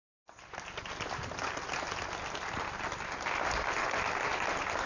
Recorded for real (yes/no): yes